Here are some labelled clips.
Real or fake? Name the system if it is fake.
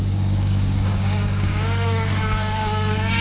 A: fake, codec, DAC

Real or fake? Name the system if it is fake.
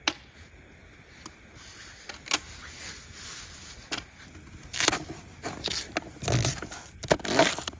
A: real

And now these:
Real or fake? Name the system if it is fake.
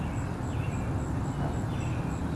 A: real